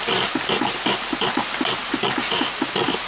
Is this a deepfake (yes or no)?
no